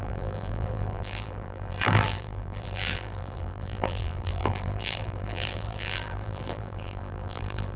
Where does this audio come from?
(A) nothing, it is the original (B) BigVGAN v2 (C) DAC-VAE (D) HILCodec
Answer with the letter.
B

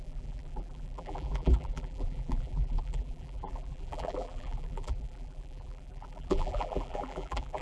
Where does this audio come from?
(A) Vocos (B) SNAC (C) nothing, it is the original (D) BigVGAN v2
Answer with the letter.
D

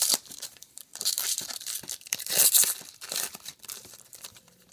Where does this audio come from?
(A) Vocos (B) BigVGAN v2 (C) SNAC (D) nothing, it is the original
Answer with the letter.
B